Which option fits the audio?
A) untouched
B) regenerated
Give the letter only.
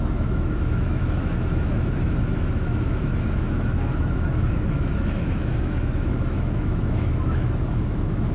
B